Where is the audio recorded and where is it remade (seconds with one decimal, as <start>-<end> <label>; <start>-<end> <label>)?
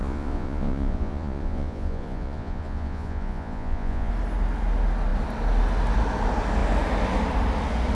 0.0-4.1 remade; 4.1-7.9 recorded